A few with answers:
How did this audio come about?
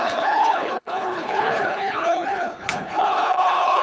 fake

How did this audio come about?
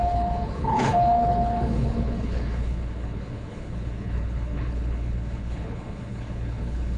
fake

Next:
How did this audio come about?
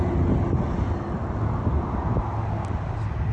real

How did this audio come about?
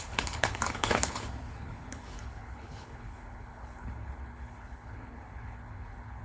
fake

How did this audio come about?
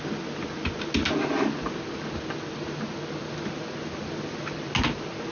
real